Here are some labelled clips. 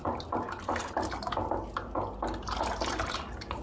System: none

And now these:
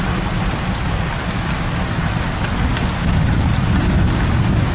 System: none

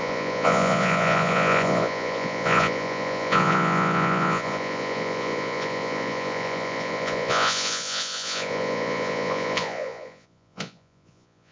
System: vocoder, Vocos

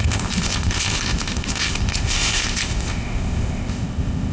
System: codec, ZipCodec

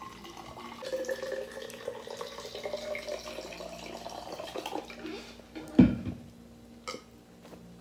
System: none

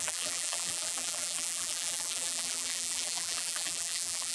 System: vocoder, BigVGAN v2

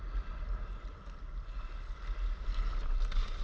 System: none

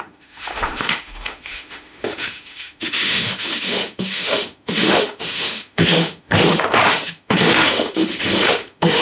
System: autoencoder, DAC-VAE